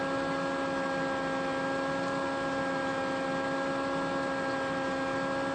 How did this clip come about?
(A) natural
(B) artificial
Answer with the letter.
A